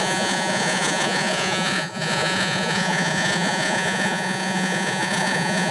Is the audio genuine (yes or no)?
no